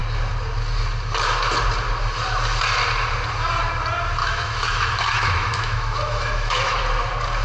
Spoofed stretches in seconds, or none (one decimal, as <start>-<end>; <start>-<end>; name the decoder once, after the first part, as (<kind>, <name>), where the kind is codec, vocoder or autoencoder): 4.2-6.8 (autoencoder, DAC-VAE)